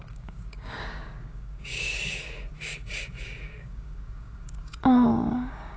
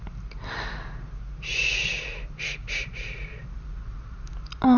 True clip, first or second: second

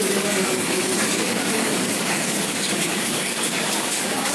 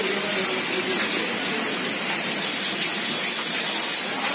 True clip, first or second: second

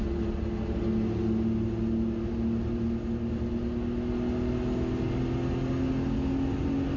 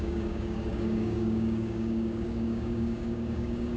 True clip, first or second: first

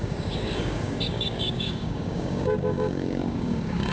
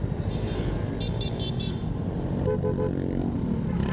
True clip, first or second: second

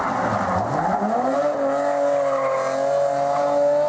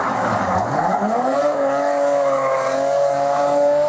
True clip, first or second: first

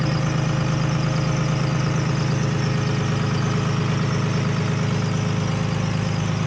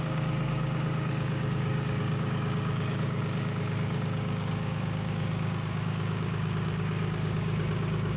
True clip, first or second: first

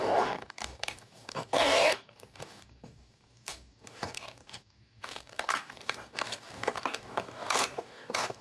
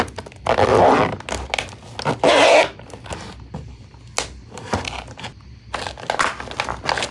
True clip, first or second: second